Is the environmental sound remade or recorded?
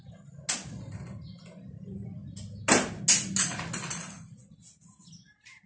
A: recorded